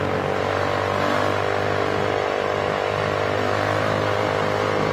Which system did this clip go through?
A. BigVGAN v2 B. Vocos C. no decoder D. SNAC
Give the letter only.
C